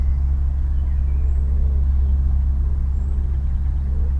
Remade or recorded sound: recorded